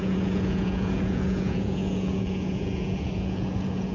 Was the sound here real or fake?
fake